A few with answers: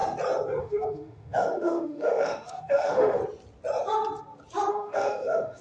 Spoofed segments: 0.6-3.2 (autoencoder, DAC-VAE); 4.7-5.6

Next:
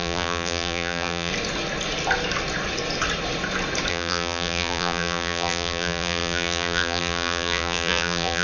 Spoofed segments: 0.0-1.3 (vocoder, BigVGAN v2); 3.9-8.4

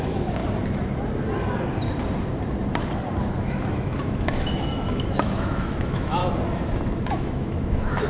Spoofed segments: 0.0-0.4 (autoencoder, DAC-VAE); 3.2-6.2; 7.1-8.1